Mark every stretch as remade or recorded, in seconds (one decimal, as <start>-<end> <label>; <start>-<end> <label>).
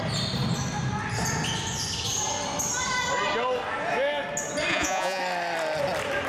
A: 0.0-4.7 recorded; 4.7-5.2 remade; 5.2-6.3 recorded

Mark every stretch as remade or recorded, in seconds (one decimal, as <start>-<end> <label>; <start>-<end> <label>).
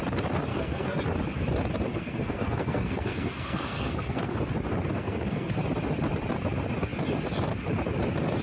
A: 0.0-0.5 recorded; 0.5-1.0 remade; 1.0-1.9 recorded; 1.9-4.4 remade; 4.4-4.9 recorded; 4.9-5.5 remade; 5.5-8.4 recorded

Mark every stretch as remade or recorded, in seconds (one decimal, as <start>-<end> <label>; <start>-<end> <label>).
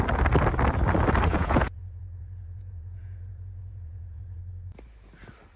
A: 0.0-1.3 recorded; 1.3-4.4 remade; 4.4-5.6 recorded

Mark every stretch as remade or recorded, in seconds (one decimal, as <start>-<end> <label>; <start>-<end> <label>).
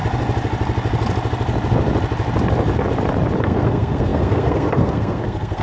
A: 0.0-3.4 recorded; 3.4-5.6 remade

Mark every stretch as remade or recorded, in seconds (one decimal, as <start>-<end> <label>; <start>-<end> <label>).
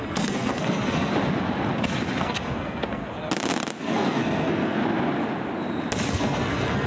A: 0.0-1.1 remade; 1.1-2.2 recorded; 2.2-3.0 remade; 3.0-3.8 recorded; 3.8-4.8 remade; 4.8-6.1 recorded; 6.1-6.9 remade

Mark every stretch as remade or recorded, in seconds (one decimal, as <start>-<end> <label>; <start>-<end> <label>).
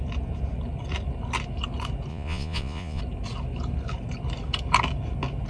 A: 0.0-2.1 recorded; 2.1-3.0 remade; 3.0-5.5 recorded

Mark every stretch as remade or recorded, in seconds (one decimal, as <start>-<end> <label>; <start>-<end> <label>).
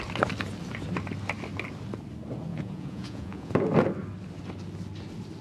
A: 0.0-2.5 recorded; 2.5-3.5 remade; 3.5-5.4 recorded